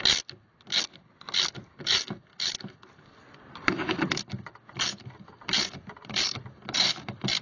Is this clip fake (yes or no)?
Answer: no